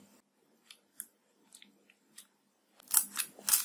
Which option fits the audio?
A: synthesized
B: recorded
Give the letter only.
B